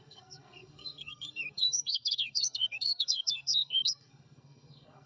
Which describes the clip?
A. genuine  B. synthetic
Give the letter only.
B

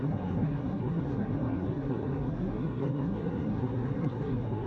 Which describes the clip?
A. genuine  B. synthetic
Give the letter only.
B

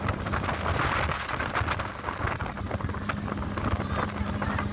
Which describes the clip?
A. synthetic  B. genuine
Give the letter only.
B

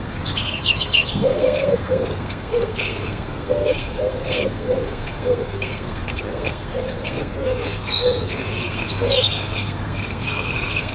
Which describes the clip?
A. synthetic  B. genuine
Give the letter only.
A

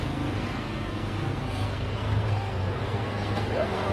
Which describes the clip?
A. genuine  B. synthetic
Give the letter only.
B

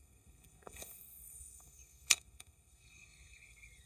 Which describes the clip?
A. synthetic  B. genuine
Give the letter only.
A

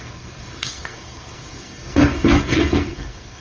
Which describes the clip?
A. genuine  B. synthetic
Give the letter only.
B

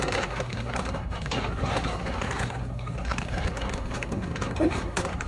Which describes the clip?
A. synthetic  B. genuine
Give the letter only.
A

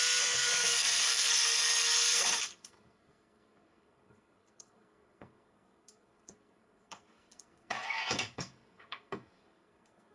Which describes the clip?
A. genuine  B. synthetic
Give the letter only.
B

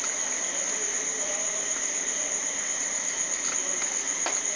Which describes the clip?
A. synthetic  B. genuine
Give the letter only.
B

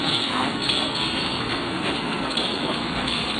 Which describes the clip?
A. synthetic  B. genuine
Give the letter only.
A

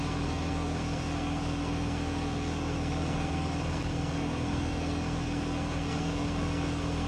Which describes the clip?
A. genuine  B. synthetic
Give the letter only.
B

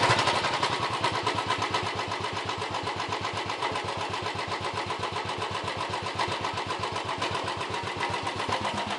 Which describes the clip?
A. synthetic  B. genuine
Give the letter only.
B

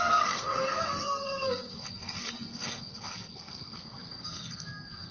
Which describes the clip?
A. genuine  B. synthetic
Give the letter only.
B